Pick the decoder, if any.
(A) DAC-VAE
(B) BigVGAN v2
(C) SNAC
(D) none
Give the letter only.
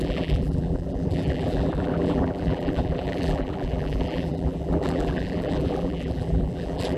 B